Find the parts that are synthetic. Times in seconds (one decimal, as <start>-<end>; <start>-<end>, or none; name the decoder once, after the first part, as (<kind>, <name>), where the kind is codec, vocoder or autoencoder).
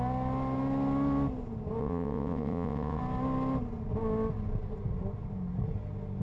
1.8-3.0 (vocoder, WaveNeXt)